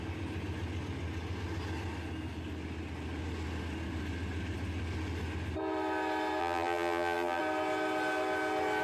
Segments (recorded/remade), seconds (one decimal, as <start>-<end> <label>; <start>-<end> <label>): 0.0-6.4 recorded; 6.4-7.4 remade; 7.4-8.8 recorded